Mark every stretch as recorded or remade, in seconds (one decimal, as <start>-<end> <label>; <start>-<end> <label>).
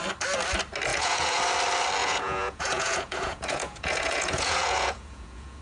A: 0.0-0.9 recorded; 0.9-1.4 remade; 1.4-2.0 recorded; 2.0-5.6 remade